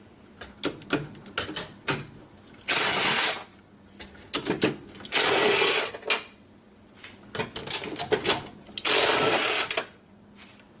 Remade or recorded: recorded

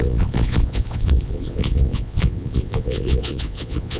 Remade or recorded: remade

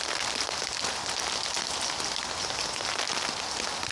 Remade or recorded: recorded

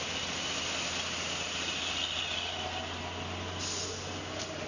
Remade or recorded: recorded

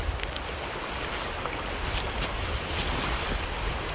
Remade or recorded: recorded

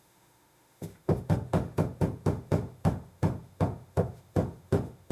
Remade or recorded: remade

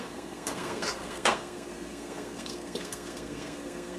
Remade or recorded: remade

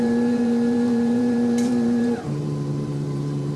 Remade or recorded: remade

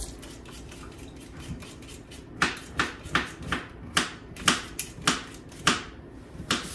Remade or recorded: recorded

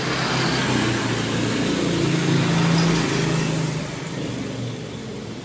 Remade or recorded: recorded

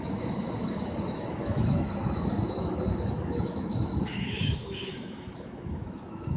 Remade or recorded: remade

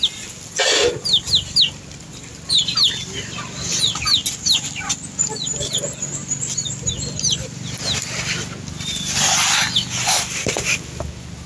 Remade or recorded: recorded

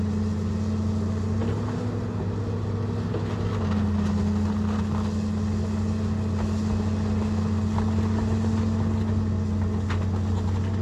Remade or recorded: recorded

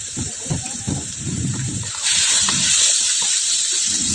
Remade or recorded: remade